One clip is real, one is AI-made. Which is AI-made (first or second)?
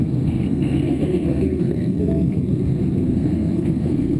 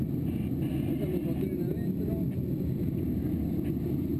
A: first